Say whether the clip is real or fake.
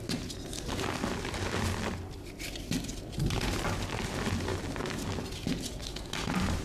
fake